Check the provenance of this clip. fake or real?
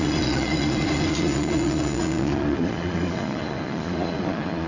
fake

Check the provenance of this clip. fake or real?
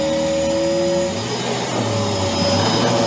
real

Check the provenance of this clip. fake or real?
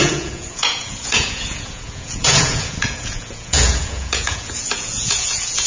fake